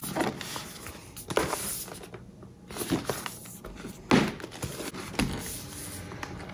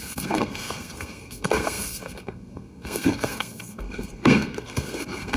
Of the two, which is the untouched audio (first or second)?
first